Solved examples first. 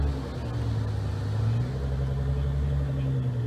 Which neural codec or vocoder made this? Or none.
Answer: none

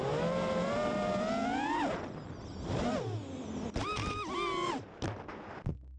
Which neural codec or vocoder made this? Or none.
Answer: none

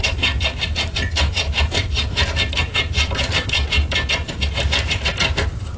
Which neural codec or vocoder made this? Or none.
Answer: none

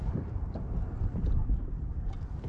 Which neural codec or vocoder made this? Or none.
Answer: none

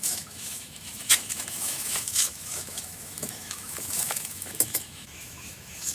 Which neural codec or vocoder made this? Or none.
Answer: autoencoder, DAC-VAE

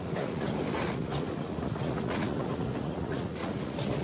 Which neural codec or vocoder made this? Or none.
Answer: vocoder, Vocos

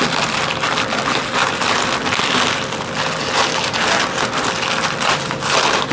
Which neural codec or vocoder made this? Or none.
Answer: none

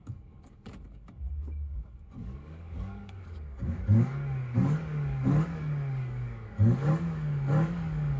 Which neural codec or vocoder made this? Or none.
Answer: codec, DAC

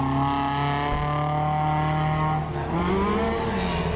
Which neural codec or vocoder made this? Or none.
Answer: none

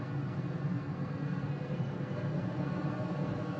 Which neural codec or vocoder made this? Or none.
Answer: codec, SNAC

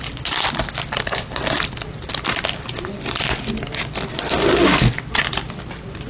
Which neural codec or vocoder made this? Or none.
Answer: none